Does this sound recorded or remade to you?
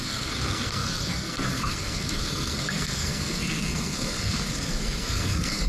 remade